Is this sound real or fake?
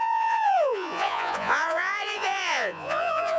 fake